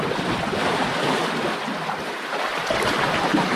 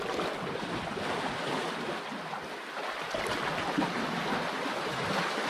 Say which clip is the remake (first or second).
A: first